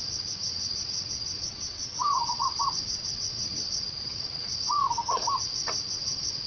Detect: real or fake fake